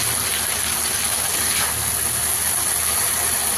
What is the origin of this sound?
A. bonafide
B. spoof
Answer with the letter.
A